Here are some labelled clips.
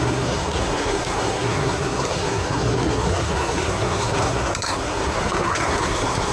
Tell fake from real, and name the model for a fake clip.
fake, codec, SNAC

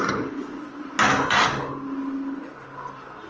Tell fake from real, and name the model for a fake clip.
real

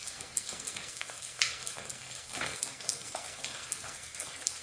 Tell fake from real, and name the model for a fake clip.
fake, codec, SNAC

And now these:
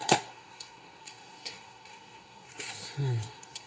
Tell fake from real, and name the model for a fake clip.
fake, codec, SNAC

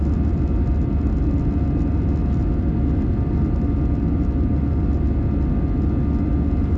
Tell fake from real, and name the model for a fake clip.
real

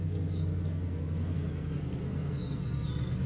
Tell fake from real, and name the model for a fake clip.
fake, codec, SNAC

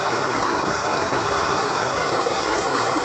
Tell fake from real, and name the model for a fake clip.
fake, codec, SNAC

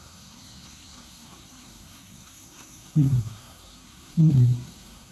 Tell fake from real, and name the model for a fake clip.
fake, codec, SNAC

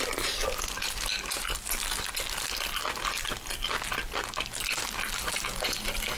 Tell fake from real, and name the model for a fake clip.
real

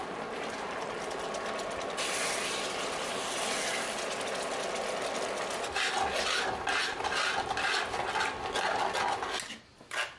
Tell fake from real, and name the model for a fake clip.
real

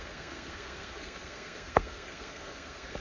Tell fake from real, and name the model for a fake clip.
fake, codec, SNAC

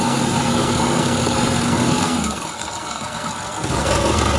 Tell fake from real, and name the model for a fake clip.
fake, codec, SNAC